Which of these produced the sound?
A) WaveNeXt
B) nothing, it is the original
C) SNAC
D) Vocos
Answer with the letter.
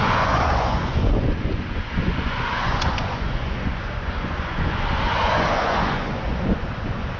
D